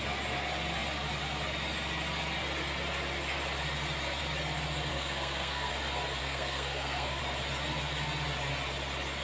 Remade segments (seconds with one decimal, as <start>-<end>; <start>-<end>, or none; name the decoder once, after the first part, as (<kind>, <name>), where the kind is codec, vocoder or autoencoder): 4.9-5.7 (codec, SNAC); 6.2-7.2